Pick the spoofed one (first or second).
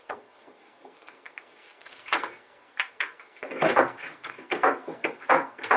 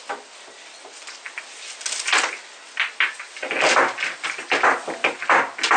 first